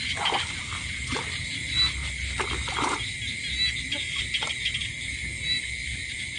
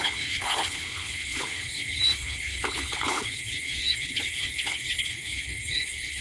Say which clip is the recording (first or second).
first